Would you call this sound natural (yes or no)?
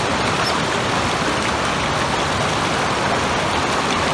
yes